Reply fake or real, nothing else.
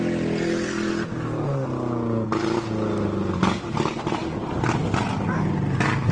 real